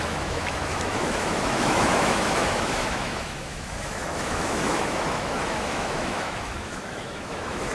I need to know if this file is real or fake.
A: fake